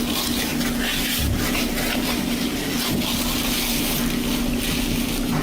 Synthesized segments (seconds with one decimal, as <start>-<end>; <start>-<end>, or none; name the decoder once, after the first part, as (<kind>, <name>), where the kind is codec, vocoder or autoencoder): none